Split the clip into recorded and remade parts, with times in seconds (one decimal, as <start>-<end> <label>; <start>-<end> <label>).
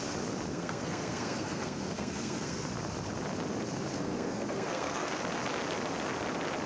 0.0-0.5 recorded; 0.5-2.7 remade; 2.7-3.9 recorded; 3.9-5.2 remade; 5.2-6.7 recorded